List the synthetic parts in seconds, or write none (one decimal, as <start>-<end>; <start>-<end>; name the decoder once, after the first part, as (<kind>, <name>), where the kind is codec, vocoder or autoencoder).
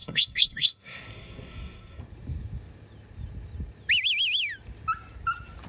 0.0-2.0 (codec, SNAC)